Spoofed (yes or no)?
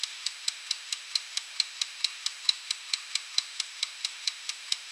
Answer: yes